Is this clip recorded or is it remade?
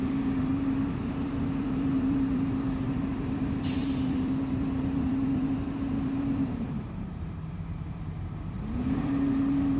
remade